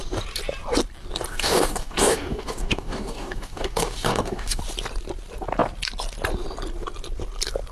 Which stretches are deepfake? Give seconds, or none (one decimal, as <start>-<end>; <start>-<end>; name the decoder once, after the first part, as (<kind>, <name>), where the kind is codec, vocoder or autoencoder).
1.3-4.6 (codec, DAC)